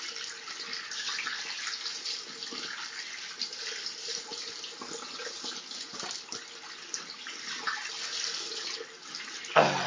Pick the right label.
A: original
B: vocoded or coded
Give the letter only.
A